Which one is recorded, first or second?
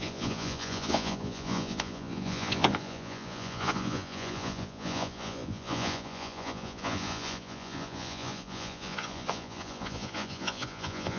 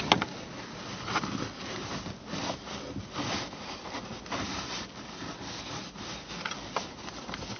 second